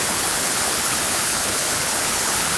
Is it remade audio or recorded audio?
remade